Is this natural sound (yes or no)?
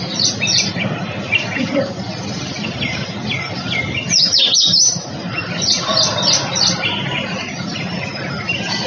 yes